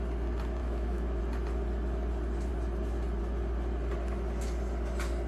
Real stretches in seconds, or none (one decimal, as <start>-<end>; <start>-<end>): 0.0-0.6; 1.2-5.3